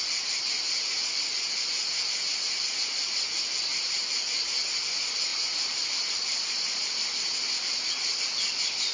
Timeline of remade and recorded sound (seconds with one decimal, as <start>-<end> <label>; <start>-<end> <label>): 0.0-3.7 recorded; 3.7-4.2 remade; 4.2-5.3 recorded; 5.3-7.9 remade; 7.9-8.9 recorded